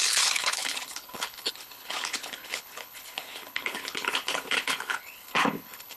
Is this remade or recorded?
remade